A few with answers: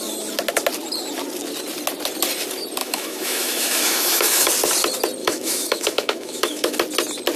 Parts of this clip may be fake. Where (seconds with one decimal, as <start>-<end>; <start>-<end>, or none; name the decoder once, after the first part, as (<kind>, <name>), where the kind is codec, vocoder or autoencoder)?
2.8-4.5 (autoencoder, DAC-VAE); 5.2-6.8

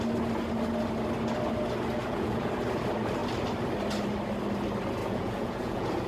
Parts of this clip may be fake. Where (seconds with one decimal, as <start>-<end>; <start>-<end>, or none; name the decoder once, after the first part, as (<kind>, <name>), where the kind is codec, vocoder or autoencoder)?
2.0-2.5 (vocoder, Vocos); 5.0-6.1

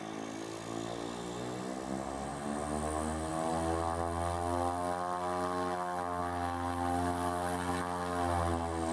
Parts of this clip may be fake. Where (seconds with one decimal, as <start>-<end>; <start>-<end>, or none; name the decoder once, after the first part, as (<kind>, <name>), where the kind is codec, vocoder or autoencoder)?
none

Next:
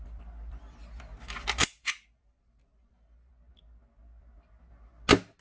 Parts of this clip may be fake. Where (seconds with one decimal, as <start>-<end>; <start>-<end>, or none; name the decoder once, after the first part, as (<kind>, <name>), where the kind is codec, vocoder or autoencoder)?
1.6-3.3 (vocoder, BigVGAN v2)